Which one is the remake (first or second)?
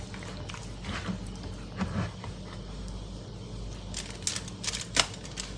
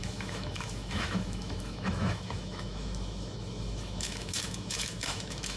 second